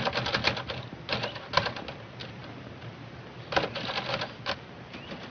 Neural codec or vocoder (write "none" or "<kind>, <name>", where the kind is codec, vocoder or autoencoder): none